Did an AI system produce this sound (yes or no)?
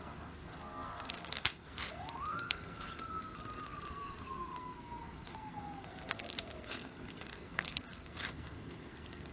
yes